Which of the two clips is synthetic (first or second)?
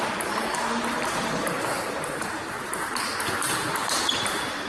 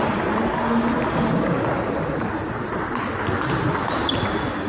first